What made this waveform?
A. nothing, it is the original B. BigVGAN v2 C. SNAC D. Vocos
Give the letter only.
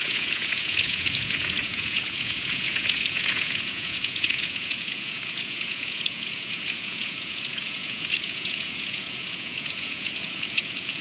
D